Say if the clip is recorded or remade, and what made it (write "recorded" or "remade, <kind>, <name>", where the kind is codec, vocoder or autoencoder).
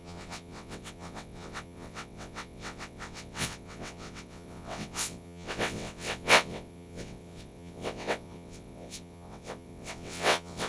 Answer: remade, vocoder, WaveNeXt